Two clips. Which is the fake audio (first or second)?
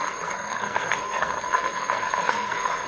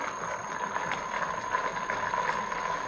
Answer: first